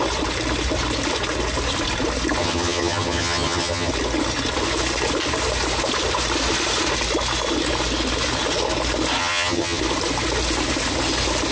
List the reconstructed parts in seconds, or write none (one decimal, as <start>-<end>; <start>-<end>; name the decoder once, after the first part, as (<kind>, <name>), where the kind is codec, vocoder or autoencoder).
2.4-3.9 (vocoder, HiFi-GAN); 9.2-9.8